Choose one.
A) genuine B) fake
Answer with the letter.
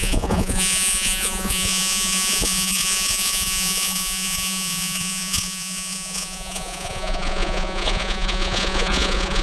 B